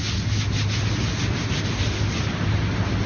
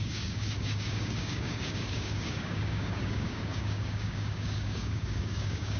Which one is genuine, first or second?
first